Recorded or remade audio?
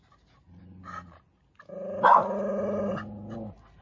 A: recorded